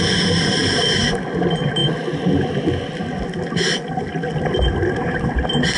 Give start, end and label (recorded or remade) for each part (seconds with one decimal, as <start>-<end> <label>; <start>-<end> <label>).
0.0-5.8 recorded